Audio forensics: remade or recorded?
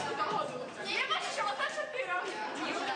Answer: remade